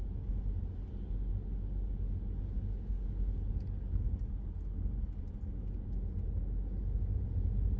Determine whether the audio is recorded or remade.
recorded